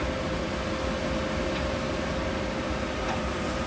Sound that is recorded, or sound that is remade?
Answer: recorded